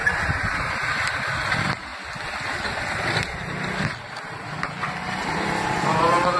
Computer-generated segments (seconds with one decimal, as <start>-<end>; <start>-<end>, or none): 0.0-0.7